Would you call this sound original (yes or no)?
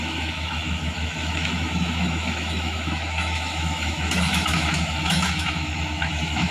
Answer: no